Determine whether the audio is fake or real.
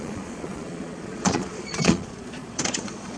fake